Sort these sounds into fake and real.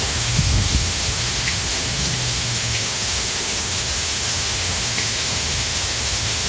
fake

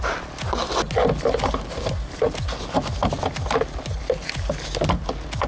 real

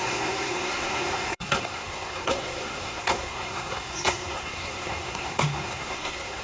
fake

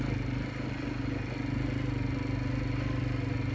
real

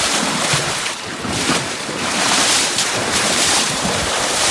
fake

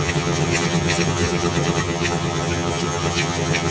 fake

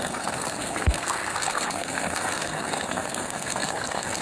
fake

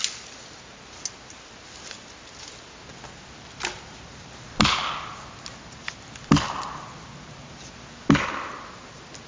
real